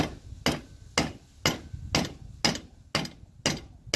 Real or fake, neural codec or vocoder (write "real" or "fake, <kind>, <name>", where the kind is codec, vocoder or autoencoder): real